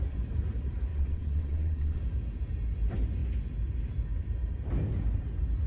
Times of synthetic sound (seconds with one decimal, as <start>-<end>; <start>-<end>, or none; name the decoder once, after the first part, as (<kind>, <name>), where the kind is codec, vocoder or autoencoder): 0.9-2.0 (vocoder, WaveNeXt)

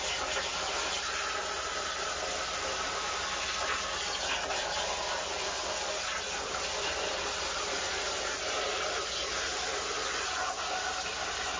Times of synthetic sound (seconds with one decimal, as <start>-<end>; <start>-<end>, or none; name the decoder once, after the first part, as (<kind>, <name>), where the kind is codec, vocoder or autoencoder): none